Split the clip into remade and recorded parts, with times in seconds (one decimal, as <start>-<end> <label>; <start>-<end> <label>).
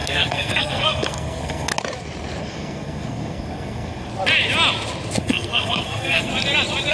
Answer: 0.0-1.7 remade; 1.7-2.4 recorded; 2.4-4.1 remade; 4.1-5.2 recorded; 5.2-6.3 remade; 6.3-6.9 recorded